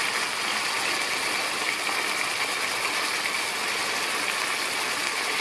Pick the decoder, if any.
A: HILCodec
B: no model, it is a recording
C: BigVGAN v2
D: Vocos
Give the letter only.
B